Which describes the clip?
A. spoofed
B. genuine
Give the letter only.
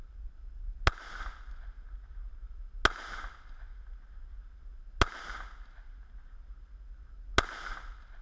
B